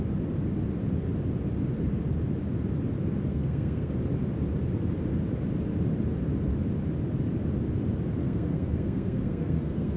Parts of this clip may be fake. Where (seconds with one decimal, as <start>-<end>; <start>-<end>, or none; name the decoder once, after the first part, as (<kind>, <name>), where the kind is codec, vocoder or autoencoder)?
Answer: 3.3-3.9 (codec, SNAC); 8.2-10.0